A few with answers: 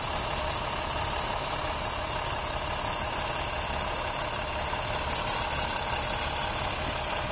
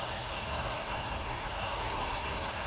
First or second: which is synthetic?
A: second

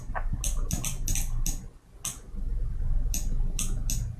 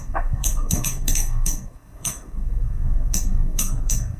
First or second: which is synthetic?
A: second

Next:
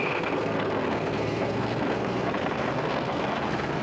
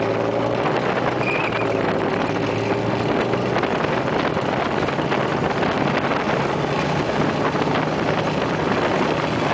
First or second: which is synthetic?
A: first